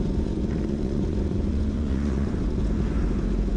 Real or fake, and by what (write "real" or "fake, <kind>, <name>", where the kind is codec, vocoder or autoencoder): fake, vocoder, Vocos